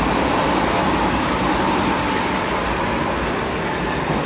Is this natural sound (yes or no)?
yes